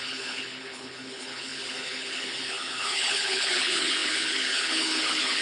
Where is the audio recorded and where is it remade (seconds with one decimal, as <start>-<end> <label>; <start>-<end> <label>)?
0.0-5.4 remade